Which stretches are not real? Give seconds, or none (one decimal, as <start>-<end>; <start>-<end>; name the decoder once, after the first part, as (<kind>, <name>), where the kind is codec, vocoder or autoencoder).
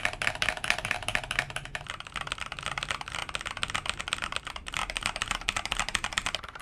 0.0-3.2 (vocoder, BigVGAN v2); 4.0-6.6